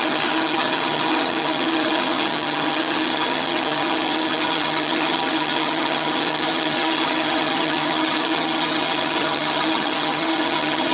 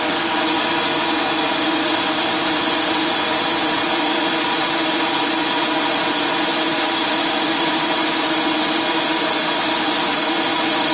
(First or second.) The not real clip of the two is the first